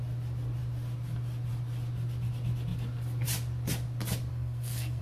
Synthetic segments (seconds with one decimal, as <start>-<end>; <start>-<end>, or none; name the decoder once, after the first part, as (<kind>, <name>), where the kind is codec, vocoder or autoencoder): 4.3-5.0 (codec, SNAC)